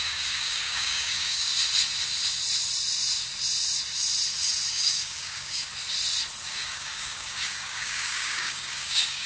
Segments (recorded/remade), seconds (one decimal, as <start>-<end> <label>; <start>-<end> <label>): 0.0-1.5 remade; 1.5-4.7 recorded; 4.7-5.7 remade; 5.7-6.4 recorded; 6.4-9.3 remade